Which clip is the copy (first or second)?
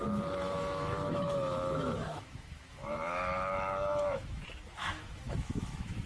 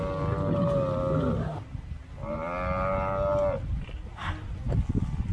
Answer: first